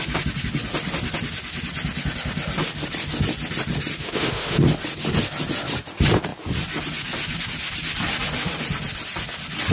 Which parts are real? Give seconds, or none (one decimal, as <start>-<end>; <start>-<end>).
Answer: 0.0-4.0; 4.6-9.7